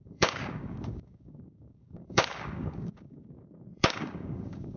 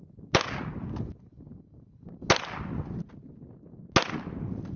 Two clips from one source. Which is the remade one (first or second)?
first